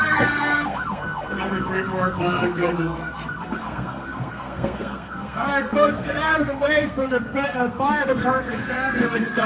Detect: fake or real fake